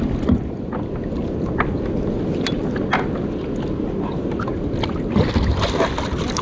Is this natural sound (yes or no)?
yes